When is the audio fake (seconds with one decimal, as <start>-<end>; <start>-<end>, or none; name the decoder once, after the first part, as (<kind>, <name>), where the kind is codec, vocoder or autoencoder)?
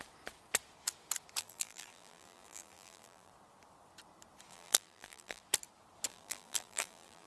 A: 1.4-3.3 (vocoder, BigVGAN v2); 4.5-5.4; 6.1-7.3